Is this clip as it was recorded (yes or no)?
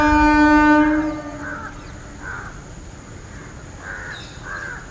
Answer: yes